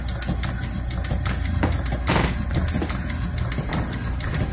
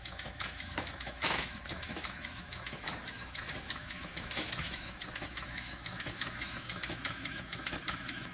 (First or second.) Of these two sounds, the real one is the first